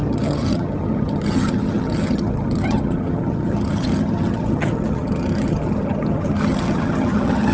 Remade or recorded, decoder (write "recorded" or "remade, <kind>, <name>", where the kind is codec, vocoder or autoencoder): remade, vocoder, HiFi-GAN